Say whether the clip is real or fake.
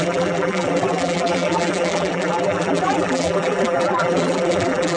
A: fake